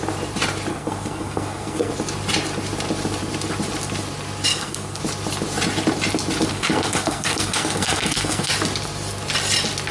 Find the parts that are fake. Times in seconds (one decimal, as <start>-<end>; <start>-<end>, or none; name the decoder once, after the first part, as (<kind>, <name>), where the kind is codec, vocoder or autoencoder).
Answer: 0.7-1.9 (codec, SNAC); 4.5-5.0; 6.5-8.5